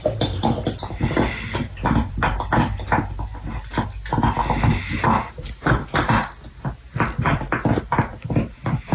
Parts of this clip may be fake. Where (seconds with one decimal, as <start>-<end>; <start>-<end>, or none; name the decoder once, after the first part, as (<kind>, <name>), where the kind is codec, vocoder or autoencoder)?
none